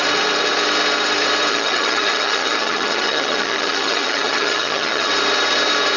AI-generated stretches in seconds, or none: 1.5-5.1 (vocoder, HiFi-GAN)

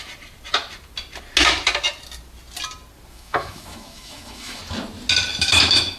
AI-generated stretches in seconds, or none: 3.1-4.6 (autoencoder, DAC-VAE); 5.4-6.0

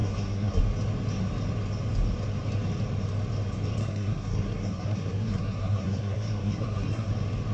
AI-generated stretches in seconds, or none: 0.0-0.6 (codec, SNAC); 3.8-7.1

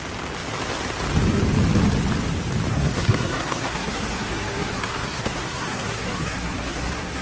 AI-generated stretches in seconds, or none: 2.7-7.2 (codec, SNAC)

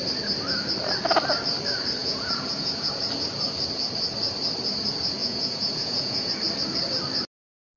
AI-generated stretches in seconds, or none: 2.0-2.9 (vocoder, Vocos); 5.2-6.3

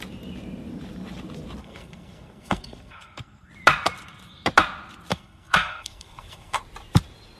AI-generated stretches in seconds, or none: 1.6-3.5 (codec, SNAC); 5.1-6.6

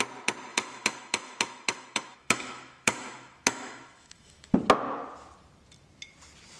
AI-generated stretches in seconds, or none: 0.5-4.5 (autoencoder, DAC-VAE)

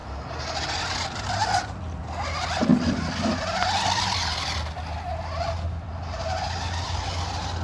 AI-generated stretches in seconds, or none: none